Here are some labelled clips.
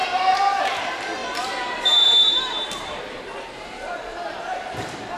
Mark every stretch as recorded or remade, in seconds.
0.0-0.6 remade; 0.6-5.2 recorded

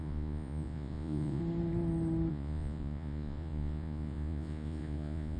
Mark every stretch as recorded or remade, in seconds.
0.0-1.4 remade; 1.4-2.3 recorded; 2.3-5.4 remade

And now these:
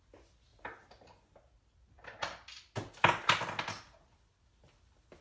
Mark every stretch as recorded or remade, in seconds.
0.0-5.2 recorded